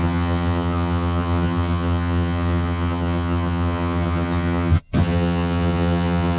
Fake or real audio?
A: fake